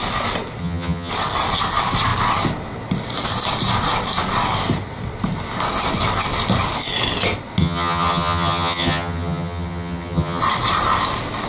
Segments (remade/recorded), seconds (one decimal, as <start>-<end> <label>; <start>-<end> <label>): 0.0-0.6 recorded; 0.6-1.1 remade; 1.1-7.6 recorded; 7.6-10.4 remade; 10.4-11.5 recorded